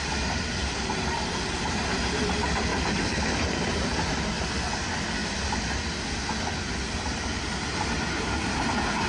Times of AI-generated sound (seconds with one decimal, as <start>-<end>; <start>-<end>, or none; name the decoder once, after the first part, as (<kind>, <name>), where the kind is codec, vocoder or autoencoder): 0.6-1.5 (vocoder, BigVGAN v2); 2.7-4.7